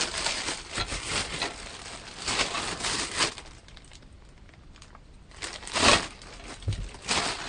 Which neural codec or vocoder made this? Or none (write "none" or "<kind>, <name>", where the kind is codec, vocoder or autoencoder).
none